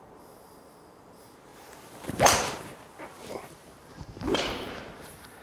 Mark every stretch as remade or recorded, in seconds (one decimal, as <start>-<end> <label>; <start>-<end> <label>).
0.0-5.4 remade